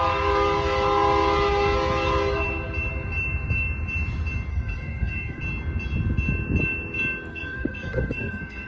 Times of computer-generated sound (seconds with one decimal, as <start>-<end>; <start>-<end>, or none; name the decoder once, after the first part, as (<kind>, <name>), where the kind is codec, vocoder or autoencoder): 4.5-5.4 (codec, SNAC); 7.3-8.7